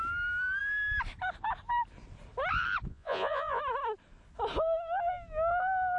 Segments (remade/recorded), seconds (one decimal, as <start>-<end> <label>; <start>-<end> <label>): 0.0-2.9 recorded; 2.9-3.6 remade; 3.6-6.0 recorded